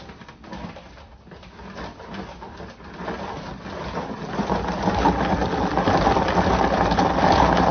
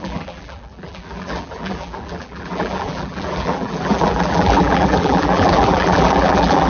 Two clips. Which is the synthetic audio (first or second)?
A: second